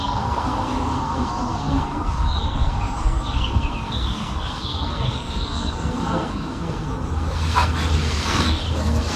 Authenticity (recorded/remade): remade